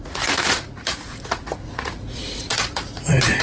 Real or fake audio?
fake